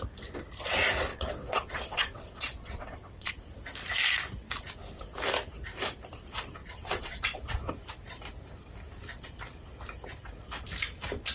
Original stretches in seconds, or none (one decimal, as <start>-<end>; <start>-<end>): 0.0-1.1; 3.3-6.6; 7.7-11.3